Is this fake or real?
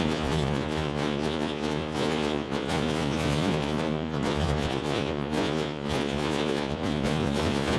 fake